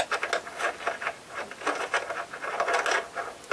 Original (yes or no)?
yes